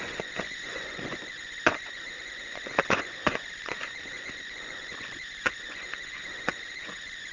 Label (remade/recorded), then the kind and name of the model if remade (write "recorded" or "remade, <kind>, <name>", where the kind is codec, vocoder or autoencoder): remade, vocoder, Vocos